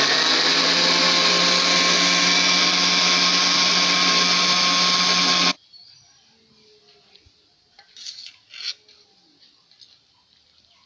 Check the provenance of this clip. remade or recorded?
recorded